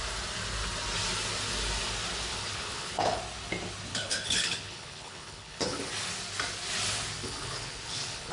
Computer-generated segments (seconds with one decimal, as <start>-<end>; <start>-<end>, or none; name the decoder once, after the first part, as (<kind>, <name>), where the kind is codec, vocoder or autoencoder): 2.3-3.2 (codec, HILCodec); 3.9-5.9; 7.2-8.3